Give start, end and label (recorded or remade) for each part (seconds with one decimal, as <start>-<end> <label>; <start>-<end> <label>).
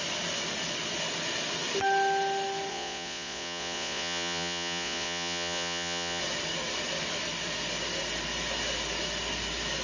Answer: 0.0-2.7 recorded; 2.7-6.2 remade; 6.2-9.8 recorded